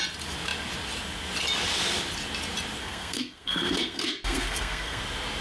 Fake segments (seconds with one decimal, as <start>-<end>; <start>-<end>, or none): 2.8-5.0